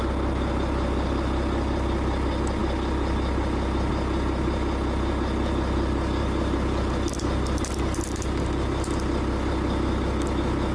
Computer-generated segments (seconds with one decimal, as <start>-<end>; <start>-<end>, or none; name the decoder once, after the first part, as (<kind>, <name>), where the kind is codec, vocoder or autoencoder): none